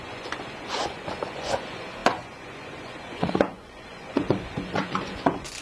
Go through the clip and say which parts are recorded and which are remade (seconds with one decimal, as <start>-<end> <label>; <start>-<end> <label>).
0.0-5.6 remade